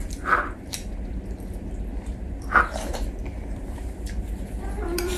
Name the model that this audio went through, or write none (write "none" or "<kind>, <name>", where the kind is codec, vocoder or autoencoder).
vocoder, BigVGAN v2